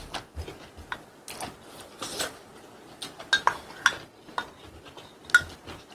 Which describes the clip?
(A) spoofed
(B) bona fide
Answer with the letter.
B